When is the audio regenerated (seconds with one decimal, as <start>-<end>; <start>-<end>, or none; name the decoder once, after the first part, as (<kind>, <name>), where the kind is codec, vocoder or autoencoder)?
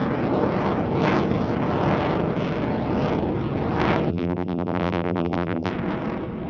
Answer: 4.1-5.7 (vocoder, BigVGAN v2)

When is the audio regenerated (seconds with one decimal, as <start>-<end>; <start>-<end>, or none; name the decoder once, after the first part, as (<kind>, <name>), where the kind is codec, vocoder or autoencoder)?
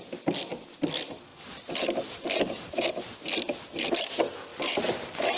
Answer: 1.3-2.9 (vocoder, BigVGAN v2); 4.5-5.4